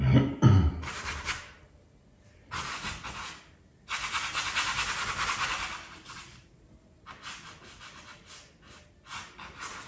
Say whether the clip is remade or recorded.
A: recorded